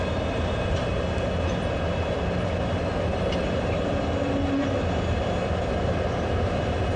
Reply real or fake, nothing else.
real